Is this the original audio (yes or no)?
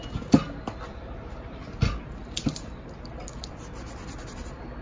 yes